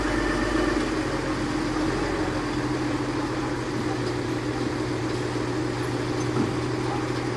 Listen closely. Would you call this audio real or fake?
real